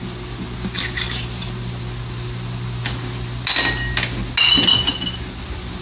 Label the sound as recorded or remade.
recorded